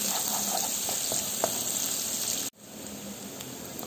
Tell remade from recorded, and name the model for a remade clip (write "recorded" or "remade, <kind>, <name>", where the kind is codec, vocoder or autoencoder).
recorded